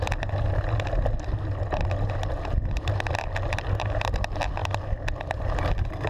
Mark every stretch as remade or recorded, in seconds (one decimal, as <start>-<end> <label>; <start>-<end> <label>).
0.0-6.1 recorded